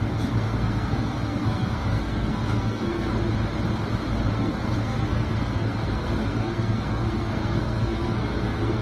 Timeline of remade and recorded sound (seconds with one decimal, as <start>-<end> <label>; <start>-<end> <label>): 0.0-3.1 remade; 3.1-4.3 recorded; 4.3-8.8 remade

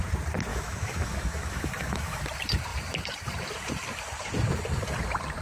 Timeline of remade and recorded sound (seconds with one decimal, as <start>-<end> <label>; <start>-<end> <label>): 0.0-0.5 recorded; 0.5-2.2 remade; 2.2-5.4 recorded